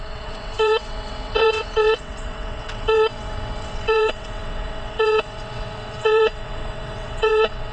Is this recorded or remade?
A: remade